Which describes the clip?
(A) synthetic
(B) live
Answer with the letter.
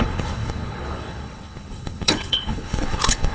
A